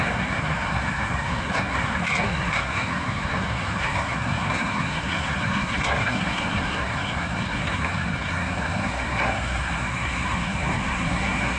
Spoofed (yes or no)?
yes